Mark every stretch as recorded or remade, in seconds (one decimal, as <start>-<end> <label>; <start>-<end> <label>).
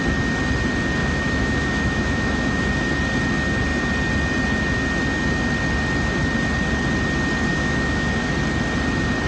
0.0-1.0 recorded; 1.0-2.6 remade; 2.6-7.5 recorded; 7.5-8.3 remade; 8.3-9.3 recorded